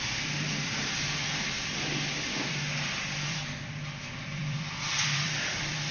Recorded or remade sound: remade